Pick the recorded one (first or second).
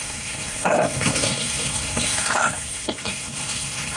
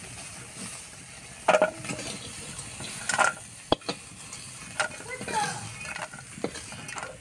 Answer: second